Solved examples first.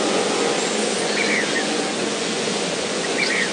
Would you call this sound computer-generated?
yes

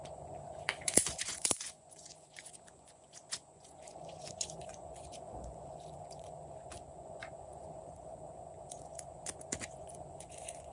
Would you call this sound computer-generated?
yes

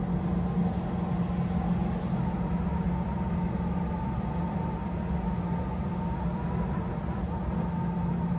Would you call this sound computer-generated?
no